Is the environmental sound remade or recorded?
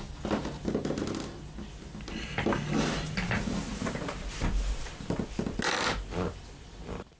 recorded